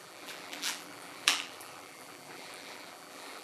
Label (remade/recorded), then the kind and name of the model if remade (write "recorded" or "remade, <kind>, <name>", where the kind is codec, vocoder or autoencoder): remade, vocoder, BigVGAN v2